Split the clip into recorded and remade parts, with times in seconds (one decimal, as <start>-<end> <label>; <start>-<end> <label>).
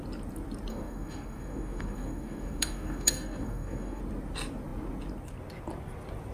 0.0-0.7 recorded; 0.7-4.0 remade; 4.0-6.3 recorded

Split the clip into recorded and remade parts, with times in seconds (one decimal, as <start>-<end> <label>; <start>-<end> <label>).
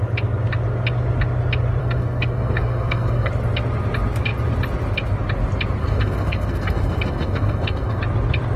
0.0-1.8 recorded; 1.8-3.3 remade; 3.3-5.8 recorded; 5.8-8.0 remade; 8.0-8.6 recorded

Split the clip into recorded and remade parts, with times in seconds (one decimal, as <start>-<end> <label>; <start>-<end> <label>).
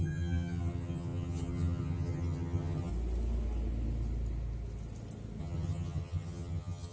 0.0-2.9 remade; 2.9-5.4 recorded; 5.4-6.9 remade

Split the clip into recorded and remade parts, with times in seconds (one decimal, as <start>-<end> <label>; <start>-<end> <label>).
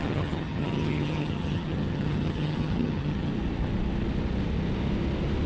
0.0-3.3 remade; 3.3-5.5 recorded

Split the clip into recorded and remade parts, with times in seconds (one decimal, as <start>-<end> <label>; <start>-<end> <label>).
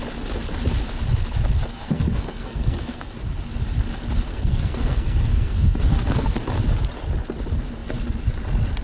0.0-1.7 recorded; 1.7-3.1 remade; 3.1-4.3 recorded; 4.3-6.4 remade; 6.4-8.8 recorded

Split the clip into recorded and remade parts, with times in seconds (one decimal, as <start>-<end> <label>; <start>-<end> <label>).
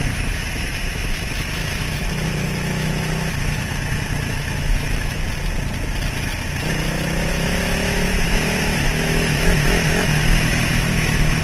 0.0-5.2 remade; 5.2-7.2 recorded; 7.2-11.4 remade